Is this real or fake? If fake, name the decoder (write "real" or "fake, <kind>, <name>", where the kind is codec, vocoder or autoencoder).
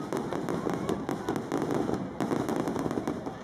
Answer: real